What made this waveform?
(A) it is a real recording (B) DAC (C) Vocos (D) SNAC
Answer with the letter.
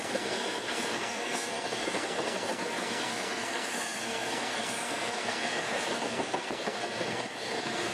D